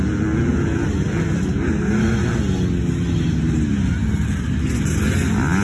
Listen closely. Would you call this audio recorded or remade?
recorded